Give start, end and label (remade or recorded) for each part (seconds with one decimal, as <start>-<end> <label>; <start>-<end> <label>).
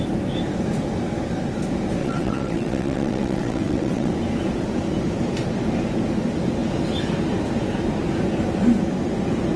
0.0-2.0 recorded; 2.0-4.1 remade; 4.1-9.6 recorded